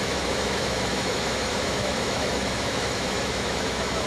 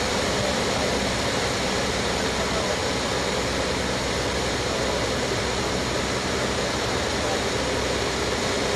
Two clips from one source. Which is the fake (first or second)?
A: first